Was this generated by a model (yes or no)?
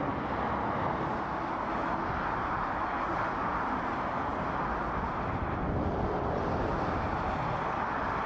no